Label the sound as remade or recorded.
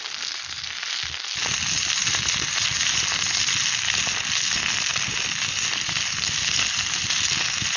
recorded